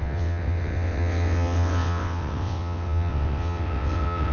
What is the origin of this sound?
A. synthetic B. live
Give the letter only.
A